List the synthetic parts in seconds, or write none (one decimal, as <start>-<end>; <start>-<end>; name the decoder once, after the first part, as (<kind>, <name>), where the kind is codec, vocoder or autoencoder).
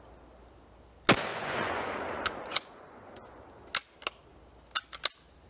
1.3-3.4 (vocoder, Vocos)